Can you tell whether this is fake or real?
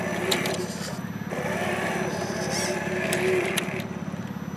real